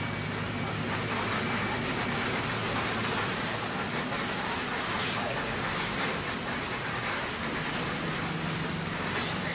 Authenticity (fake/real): real